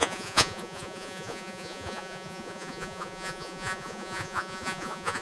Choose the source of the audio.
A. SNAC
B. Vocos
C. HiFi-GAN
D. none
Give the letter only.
B